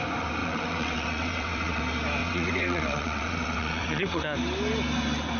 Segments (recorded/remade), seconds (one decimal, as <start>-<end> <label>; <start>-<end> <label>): 0.0-0.4 recorded; 0.4-1.8 remade; 1.8-2.2 recorded; 2.2-4.2 remade; 4.2-5.4 recorded